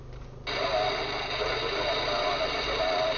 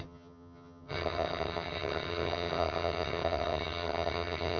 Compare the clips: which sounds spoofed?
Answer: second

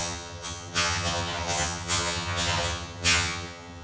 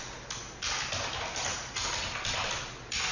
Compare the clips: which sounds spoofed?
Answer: first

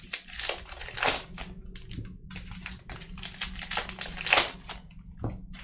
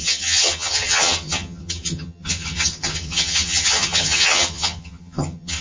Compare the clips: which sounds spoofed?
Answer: second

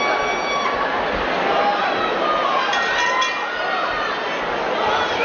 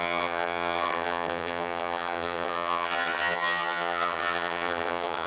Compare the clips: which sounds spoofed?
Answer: second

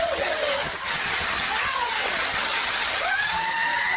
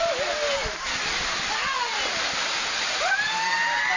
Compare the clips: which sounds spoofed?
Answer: first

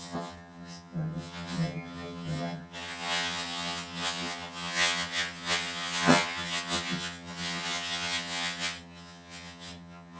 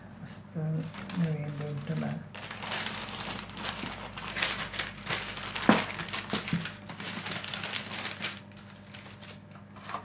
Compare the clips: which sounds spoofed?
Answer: first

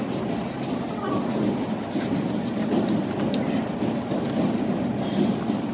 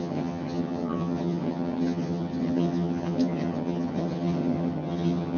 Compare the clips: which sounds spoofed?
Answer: second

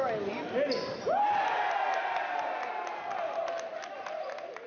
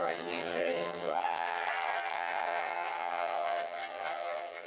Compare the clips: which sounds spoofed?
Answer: second